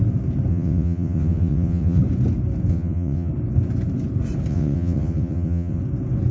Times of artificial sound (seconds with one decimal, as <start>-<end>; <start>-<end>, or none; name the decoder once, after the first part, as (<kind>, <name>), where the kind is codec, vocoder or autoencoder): 0.5-2.0 (vocoder, WaveNeXt); 2.7-3.3; 4.5-5.8